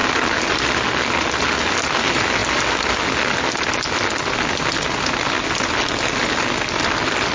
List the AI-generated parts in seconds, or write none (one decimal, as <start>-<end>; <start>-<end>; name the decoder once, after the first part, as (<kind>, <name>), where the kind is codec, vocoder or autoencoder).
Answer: none

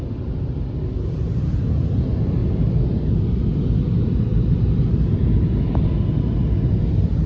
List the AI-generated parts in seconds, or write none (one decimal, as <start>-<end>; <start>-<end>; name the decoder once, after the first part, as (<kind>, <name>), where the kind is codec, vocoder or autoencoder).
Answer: 2.4-3.0 (vocoder, BigVGAN v2)

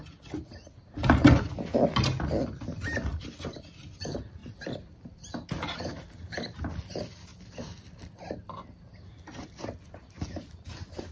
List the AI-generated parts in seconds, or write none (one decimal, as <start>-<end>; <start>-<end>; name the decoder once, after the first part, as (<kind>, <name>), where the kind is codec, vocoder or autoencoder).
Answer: 7.3-9.5 (vocoder, BigVGAN v2)

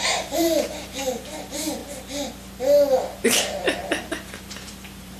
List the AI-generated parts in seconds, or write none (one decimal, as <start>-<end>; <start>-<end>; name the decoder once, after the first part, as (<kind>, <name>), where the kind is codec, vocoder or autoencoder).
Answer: 0.0-1.8 (vocoder, BigVGAN v2); 3.2-5.2

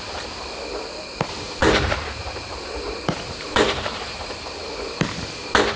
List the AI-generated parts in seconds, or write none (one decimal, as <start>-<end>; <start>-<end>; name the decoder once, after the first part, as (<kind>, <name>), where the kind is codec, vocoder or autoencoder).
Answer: 1.6-5.1 (vocoder, BigVGAN v2)

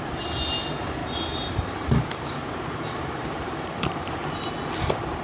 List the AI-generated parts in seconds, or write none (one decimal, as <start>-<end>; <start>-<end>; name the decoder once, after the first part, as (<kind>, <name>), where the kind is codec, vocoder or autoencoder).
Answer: 1.0-4.1 (vocoder, BigVGAN v2)